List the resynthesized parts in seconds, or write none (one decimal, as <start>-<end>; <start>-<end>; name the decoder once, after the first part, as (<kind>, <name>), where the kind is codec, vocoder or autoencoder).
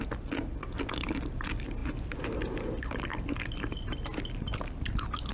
none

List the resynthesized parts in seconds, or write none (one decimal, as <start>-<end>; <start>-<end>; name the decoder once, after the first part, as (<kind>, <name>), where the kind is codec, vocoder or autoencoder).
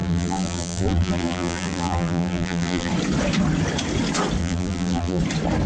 0.0-2.9 (vocoder, BigVGAN v2); 4.4-5.2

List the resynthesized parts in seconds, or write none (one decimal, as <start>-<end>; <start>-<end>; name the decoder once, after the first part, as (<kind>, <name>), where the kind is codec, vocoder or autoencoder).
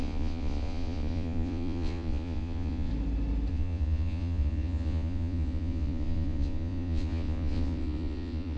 0.0-2.9 (vocoder, Vocos); 3.5-8.6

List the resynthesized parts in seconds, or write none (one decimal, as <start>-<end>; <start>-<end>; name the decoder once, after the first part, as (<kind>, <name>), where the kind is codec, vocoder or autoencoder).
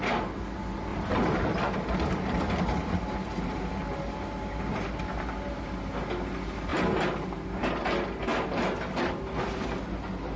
0.9-2.6 (vocoder, BigVGAN v2); 6.7-7.6; 8.3-10.0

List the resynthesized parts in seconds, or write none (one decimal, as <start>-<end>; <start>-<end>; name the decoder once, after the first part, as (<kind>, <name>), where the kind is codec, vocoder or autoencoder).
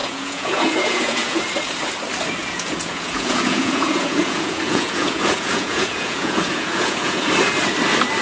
0.0-1.4 (vocoder, Vocos); 2.4-7.3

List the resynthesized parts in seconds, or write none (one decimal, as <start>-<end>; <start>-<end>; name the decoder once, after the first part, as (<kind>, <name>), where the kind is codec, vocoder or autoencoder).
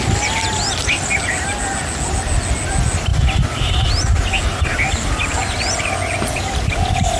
none